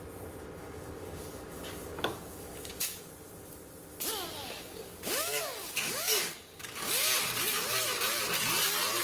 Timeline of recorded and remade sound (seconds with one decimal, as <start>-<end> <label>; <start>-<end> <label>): 0.0-0.6 recorded; 0.6-3.1 remade; 3.1-4.4 recorded; 4.4-6.9 remade; 6.9-9.0 recorded